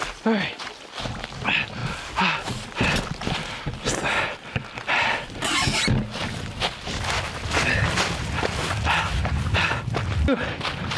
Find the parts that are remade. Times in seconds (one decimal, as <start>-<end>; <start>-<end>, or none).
none